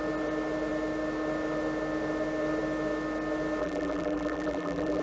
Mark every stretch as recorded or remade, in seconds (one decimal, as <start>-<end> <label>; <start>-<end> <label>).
0.0-3.6 recorded; 3.6-5.0 remade